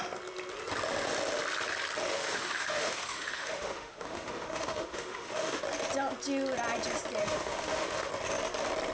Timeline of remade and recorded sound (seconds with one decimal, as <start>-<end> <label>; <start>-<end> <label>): 0.0-2.1 recorded; 2.1-5.6 remade; 5.6-7.2 recorded; 7.2-8.1 remade; 8.1-8.9 recorded